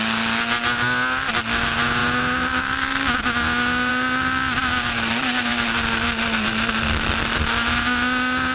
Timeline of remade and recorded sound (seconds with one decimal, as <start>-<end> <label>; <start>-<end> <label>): 0.0-8.5 recorded